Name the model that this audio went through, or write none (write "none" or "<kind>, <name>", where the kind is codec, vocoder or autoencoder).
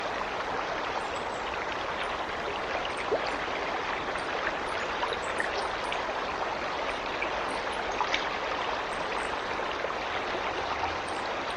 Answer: none